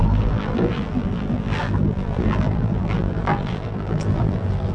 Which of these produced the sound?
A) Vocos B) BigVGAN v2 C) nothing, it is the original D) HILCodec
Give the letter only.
B